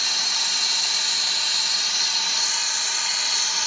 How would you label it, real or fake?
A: real